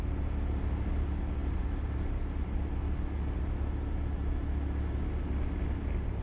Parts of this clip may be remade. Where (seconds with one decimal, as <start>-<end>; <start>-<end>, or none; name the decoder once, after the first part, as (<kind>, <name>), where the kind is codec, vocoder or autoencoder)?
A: none

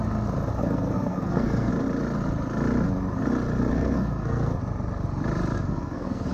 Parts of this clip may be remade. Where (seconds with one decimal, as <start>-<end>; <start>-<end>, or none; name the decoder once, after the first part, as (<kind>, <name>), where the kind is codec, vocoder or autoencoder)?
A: 0.6-1.7 (codec, SNAC); 3.7-4.6; 5.5-6.3

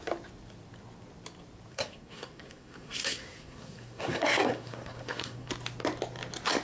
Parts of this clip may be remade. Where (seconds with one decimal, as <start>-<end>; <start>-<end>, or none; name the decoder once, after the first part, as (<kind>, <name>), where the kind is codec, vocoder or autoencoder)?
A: 1.7-5.5 (codec, SNAC)

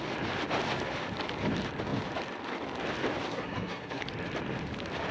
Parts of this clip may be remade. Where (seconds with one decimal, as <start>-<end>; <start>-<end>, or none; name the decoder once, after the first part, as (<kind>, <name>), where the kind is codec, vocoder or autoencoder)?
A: 3.3-4.0 (codec, SNAC)

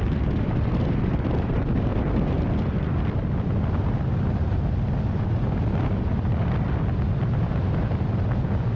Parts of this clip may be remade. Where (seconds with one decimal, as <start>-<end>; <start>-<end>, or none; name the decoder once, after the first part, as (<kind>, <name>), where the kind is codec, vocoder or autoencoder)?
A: none

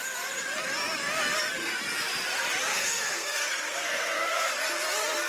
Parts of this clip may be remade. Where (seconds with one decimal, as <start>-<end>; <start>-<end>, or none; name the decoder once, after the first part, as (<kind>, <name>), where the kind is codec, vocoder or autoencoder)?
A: 2.7-4.5 (codec, SNAC)

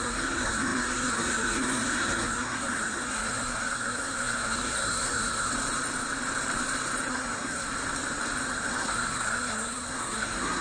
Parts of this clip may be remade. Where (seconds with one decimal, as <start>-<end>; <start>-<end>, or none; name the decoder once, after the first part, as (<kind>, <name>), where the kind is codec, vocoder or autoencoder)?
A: 0.0-5.5 (codec, SNAC); 7.1-7.7; 8.5-10.6

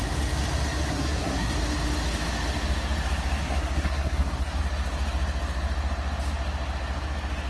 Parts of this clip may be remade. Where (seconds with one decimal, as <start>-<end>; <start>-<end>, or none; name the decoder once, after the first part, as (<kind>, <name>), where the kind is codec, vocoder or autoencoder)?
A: 0.9-1.5 (codec, SNAC); 3.4-4.6